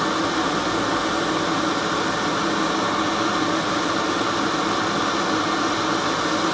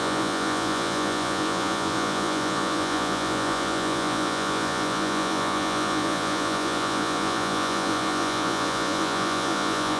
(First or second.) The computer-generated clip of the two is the second